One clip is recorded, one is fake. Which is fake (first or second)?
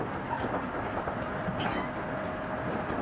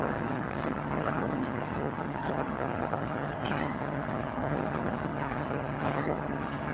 second